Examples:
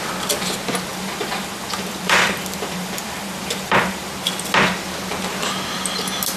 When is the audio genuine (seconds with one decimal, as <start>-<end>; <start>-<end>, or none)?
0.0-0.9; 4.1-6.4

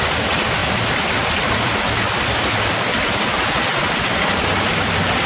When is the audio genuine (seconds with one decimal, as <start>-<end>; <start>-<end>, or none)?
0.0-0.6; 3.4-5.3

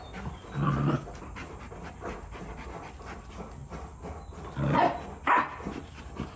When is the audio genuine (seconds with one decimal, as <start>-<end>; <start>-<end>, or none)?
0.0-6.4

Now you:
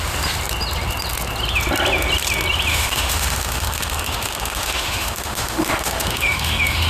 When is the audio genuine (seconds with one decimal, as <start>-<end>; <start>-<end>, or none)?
0.0-2.7